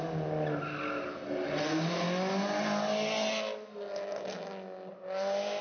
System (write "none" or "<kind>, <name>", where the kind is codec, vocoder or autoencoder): none